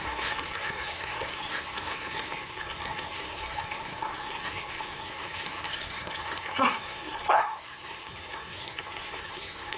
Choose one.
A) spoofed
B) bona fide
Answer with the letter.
A